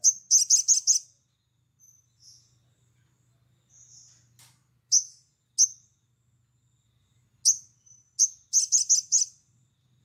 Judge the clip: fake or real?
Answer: real